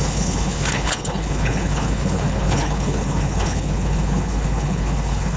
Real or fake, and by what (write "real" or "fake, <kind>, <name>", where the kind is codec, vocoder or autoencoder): fake, codec, HILCodec